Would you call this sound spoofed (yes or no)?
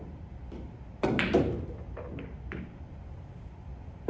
no